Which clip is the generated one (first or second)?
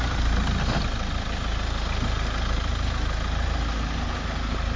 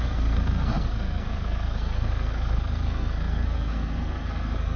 second